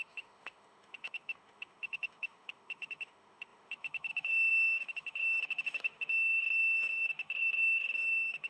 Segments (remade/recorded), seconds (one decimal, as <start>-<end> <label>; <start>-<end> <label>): 0.0-8.5 remade